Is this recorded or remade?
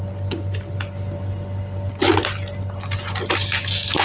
recorded